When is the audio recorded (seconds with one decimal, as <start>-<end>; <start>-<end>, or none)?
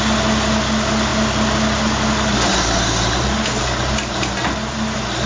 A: 0.0-5.3